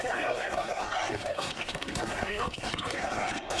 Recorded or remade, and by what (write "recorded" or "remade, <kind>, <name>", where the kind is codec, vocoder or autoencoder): remade, codec, SNAC